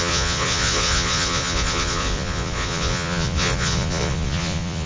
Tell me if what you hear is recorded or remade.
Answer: remade